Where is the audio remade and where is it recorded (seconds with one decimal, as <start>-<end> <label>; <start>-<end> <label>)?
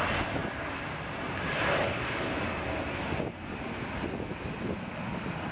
0.0-5.5 recorded